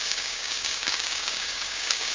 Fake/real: fake